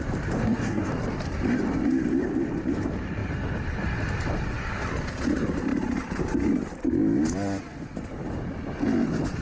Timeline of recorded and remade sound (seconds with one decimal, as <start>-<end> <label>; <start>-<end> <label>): 0.0-0.4 recorded; 0.4-0.9 remade; 0.9-9.4 recorded